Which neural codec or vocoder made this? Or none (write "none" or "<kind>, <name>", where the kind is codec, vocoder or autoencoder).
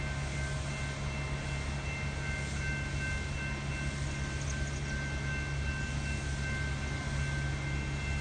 none